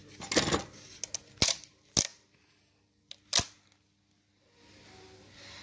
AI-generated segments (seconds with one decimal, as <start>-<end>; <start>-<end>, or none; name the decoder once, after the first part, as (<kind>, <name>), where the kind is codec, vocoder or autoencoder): none